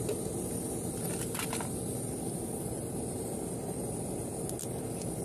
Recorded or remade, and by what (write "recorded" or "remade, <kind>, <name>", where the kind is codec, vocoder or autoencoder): recorded